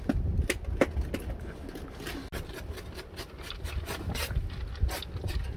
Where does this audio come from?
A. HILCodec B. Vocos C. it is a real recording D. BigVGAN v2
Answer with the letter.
C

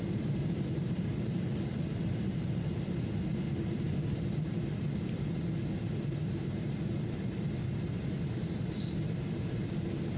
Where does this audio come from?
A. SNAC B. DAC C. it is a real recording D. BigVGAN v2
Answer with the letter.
D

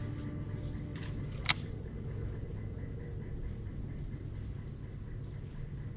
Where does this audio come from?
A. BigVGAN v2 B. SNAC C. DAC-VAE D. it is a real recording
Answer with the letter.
D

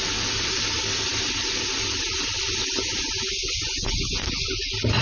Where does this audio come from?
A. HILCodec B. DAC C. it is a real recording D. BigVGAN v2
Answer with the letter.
C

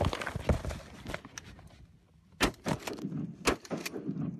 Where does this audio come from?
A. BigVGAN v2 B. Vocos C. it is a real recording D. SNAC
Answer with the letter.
C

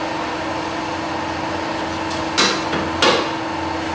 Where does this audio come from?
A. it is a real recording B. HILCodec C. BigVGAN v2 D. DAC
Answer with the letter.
A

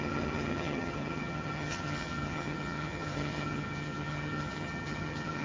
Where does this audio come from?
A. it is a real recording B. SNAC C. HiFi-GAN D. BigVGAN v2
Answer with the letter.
C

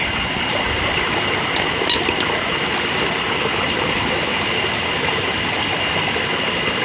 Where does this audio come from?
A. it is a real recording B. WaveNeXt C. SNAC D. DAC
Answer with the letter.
A